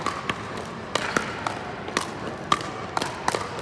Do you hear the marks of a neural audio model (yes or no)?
no